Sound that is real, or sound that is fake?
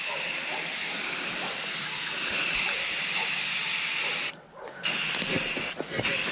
real